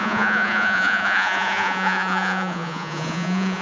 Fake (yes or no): yes